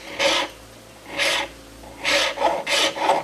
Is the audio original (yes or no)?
yes